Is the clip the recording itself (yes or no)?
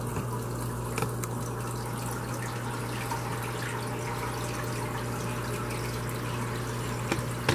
yes